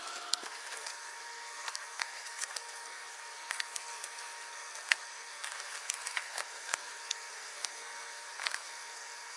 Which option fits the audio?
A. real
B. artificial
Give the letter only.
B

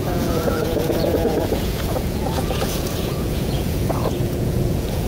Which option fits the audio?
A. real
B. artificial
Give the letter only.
B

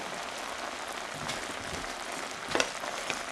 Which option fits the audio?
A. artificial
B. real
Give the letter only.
B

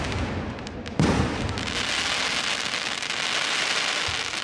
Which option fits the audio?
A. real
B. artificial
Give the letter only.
A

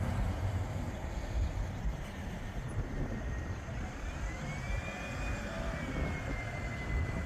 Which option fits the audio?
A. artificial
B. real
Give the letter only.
B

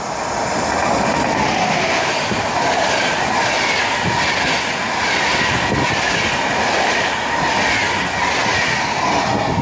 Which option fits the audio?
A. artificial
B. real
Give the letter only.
B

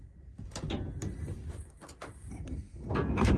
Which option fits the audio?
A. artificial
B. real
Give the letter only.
B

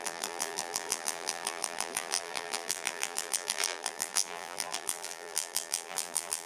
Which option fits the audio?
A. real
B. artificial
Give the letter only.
B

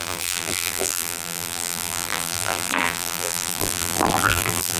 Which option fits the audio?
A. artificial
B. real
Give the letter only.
A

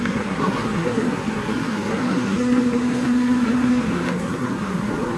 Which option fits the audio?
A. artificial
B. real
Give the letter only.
A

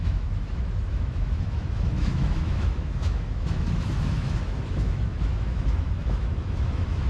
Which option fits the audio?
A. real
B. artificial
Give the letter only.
B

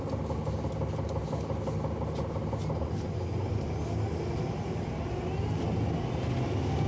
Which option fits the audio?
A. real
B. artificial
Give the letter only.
A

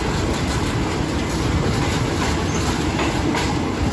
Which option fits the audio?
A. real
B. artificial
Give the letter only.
A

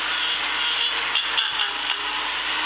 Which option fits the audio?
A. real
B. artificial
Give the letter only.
A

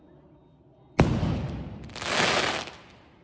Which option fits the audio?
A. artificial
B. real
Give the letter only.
B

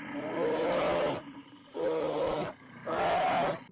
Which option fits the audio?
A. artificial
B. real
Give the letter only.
A